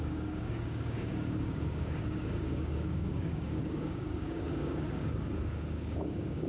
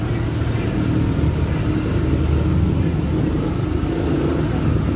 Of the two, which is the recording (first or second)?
second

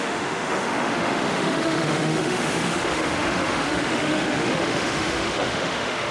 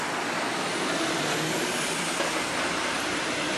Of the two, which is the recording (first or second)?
second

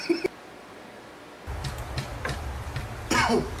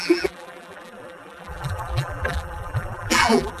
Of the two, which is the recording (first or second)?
first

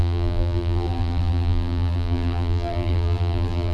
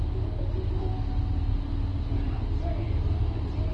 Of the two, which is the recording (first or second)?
second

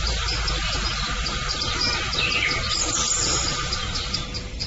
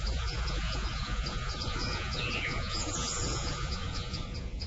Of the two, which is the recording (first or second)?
first